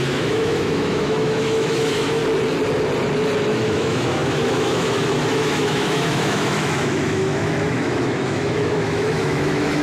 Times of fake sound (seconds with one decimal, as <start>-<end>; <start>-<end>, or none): 0.0-2.2; 3.5-9.8